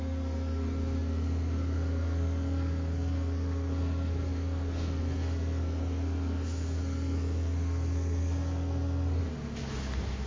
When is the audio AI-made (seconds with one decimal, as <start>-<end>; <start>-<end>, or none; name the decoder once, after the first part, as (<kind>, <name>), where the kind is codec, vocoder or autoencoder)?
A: 0.0-9.2 (codec, SNAC)